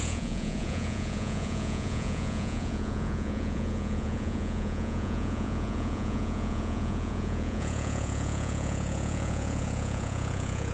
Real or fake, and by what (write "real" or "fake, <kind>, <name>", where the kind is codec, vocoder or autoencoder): fake, vocoder, Vocos